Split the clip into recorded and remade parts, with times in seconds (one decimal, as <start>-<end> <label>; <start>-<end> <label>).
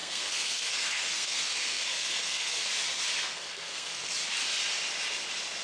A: 0.0-2.7 remade; 2.7-3.3 recorded; 3.3-4.1 remade; 4.1-5.6 recorded